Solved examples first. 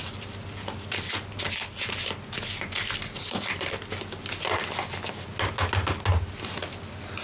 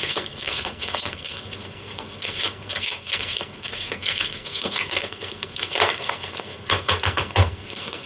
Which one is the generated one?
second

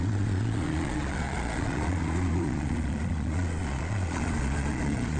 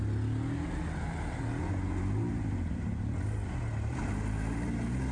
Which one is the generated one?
first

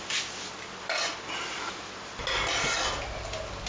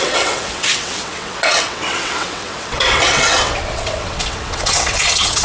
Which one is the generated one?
second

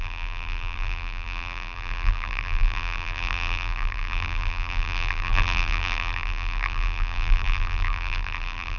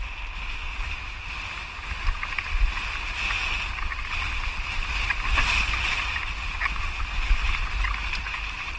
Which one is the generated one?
first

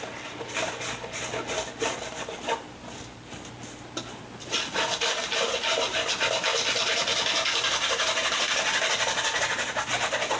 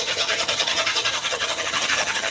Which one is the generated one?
second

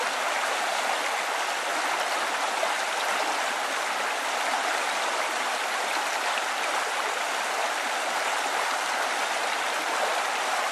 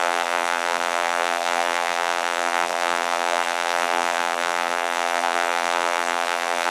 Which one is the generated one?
second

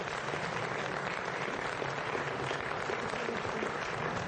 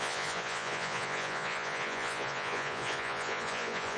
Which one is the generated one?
second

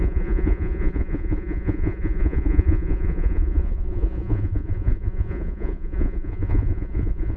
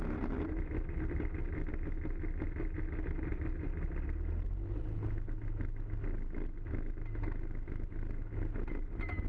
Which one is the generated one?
first